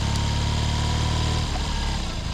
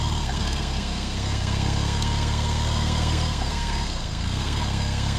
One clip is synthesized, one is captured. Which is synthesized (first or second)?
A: second